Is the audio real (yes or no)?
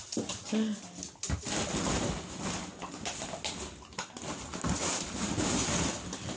yes